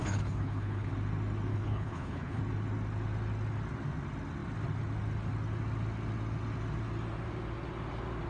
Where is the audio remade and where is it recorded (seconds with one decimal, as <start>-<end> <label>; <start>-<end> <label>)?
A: 0.0-0.9 remade; 0.9-1.5 recorded; 1.5-2.4 remade; 2.4-8.3 recorded